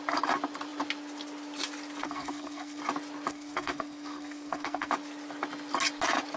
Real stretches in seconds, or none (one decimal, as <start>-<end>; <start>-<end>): 0.0-2.0; 2.8-3.3; 4.9-6.4